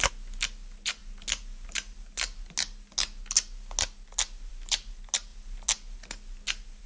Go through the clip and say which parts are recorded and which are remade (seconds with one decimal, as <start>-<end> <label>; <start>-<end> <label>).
0.0-6.9 recorded